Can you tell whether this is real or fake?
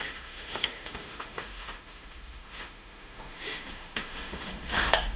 fake